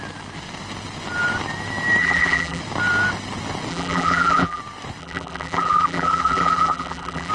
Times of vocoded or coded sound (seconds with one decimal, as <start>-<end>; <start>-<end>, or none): 2.0-2.6; 3.7-4.6; 5.0-7.3